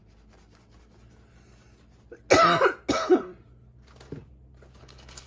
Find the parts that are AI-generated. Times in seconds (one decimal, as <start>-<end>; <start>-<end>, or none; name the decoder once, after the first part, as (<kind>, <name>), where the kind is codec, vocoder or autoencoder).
2.9-3.3 (codec, HILCodec); 4.8-5.3